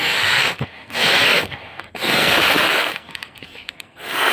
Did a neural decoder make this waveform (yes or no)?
yes